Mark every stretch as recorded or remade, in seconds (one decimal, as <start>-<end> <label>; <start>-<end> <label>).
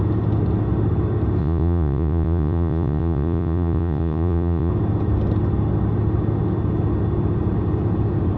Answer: 0.0-1.4 recorded; 1.4-4.7 remade; 4.7-8.4 recorded